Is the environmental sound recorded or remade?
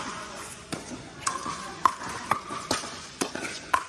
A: remade